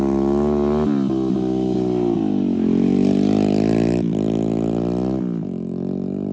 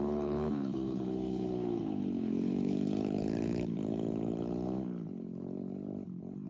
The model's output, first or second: second